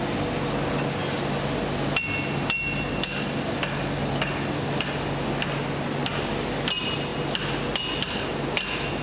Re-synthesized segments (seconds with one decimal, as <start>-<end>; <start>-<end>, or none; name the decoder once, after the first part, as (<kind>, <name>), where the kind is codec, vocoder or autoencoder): none